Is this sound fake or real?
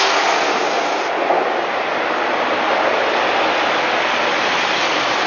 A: real